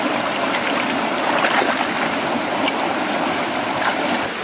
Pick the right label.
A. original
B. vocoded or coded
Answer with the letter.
A